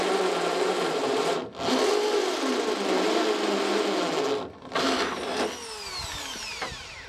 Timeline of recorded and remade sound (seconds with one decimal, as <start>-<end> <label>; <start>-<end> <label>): 0.0-1.4 remade; 1.4-4.8 recorded; 4.8-5.3 remade; 5.3-5.9 recorded; 5.9-7.1 remade